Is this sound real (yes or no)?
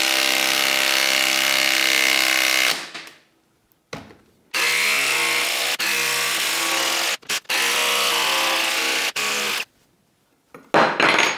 yes